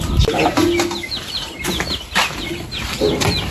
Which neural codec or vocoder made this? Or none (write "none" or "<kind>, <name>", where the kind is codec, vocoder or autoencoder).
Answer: none